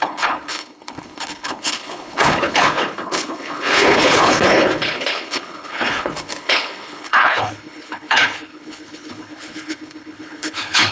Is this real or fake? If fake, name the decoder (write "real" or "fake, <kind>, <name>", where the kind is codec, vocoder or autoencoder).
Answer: fake, codec, HILCodec